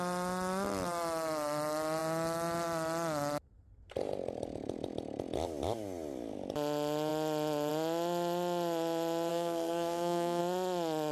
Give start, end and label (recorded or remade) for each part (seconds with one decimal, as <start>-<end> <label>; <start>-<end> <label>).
0.0-9.3 recorded; 9.3-10.4 remade; 10.4-11.1 recorded